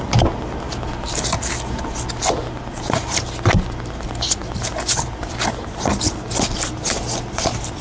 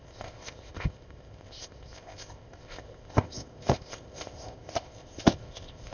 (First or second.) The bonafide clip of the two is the first